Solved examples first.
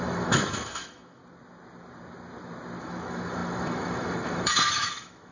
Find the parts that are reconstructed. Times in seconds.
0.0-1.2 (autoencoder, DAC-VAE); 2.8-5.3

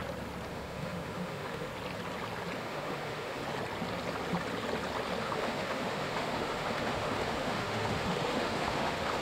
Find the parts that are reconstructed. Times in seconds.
0.5-1.7 (autoencoder, DAC-VAE); 2.6-3.4; 5.2-9.2